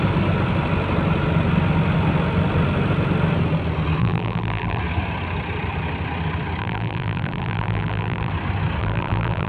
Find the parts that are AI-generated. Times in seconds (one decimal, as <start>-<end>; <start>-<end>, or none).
4.0-4.8; 6.6-8.3; 8.8-9.5